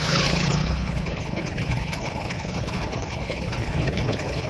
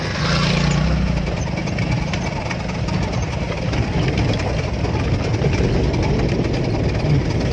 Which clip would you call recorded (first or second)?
second